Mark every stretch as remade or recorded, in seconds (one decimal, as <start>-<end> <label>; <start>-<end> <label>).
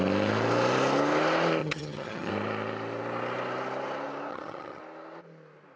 0.0-1.6 recorded; 1.6-2.3 remade; 2.3-4.3 recorded; 4.3-4.8 remade; 4.8-5.8 recorded